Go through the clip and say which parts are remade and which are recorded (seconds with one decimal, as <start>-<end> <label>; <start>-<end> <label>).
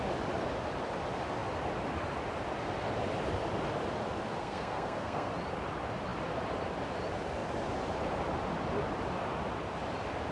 0.0-4.4 recorded; 4.4-5.3 remade; 5.3-10.3 recorded